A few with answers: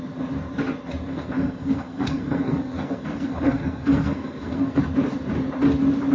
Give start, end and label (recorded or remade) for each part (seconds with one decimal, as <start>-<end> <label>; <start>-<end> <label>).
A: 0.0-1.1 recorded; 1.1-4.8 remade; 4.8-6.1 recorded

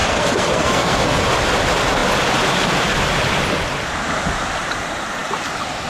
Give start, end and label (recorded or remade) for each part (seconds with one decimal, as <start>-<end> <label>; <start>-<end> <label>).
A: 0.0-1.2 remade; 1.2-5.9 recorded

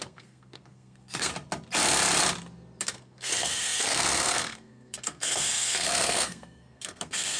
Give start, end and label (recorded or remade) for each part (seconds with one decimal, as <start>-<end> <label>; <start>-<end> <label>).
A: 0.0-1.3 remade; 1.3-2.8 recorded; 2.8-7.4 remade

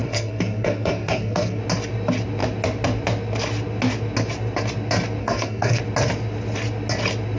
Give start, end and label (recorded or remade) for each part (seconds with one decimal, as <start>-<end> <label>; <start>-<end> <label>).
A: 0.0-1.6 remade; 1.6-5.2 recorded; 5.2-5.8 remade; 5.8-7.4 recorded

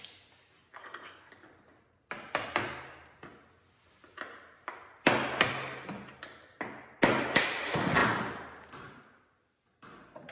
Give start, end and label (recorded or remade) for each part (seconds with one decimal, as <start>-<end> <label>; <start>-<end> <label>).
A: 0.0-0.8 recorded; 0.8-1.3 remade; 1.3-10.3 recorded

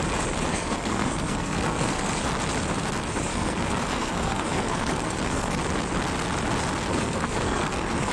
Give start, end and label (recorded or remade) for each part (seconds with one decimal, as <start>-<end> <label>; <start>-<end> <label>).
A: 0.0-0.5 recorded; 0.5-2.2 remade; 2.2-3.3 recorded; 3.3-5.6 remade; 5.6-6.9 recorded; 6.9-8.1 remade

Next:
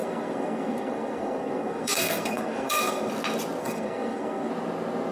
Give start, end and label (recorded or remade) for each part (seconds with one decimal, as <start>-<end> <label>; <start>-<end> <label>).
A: 0.0-3.1 remade; 3.1-3.6 recorded; 3.6-4.5 remade; 4.5-5.1 recorded

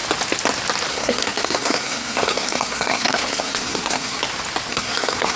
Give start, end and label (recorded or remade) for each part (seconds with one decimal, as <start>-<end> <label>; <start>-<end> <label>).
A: 0.0-0.9 recorded; 0.9-4.2 remade; 4.2-4.7 recorded; 4.7-5.4 remade